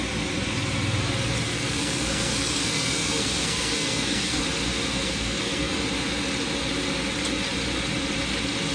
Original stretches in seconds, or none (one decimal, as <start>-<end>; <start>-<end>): 0.0-1.5; 4.4-4.9; 5.8-8.7